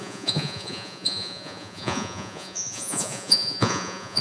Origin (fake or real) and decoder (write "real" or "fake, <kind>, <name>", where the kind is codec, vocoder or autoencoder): fake, vocoder, Vocos